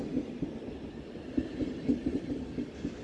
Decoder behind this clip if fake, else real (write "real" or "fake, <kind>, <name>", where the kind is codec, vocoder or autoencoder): real